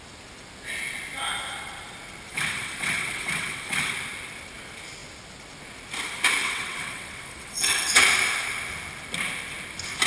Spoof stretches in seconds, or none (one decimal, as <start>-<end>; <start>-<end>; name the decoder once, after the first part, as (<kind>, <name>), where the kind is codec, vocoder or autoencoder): 2.3-3.9 (vocoder, WaveNeXt); 6.4-8.0